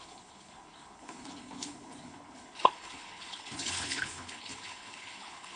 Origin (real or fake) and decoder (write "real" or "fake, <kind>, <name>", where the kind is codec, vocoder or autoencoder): fake, codec, HILCodec